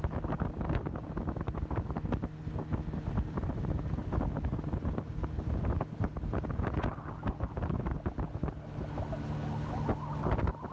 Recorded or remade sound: recorded